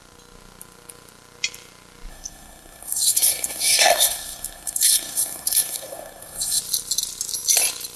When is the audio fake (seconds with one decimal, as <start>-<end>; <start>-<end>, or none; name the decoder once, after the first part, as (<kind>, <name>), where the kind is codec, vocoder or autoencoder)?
2.1-6.6 (codec, SNAC)